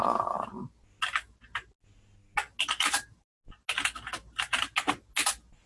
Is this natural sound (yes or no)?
yes